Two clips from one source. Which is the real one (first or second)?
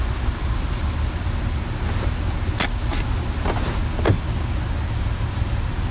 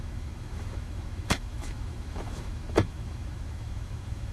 first